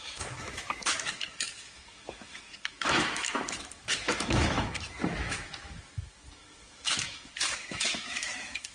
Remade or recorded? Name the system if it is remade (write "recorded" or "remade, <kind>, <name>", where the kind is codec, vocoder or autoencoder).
remade, autoencoder, DAC-VAE